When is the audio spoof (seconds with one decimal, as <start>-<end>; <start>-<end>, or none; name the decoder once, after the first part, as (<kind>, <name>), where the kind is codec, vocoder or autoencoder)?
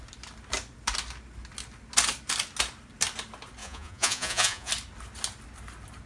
3.6-4.7 (vocoder, Vocos)